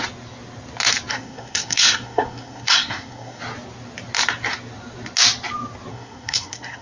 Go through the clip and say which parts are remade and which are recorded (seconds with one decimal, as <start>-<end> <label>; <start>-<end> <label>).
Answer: 0.0-1.1 recorded; 1.1-3.4 remade; 3.4-5.9 recorded; 5.9-6.8 remade